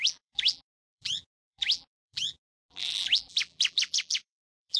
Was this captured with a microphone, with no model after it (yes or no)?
no